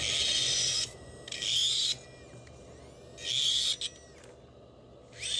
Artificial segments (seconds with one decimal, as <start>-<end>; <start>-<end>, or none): 0.4-1.1